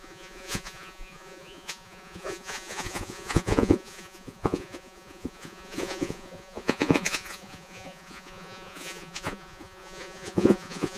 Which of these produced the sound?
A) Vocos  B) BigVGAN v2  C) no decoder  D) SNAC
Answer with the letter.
A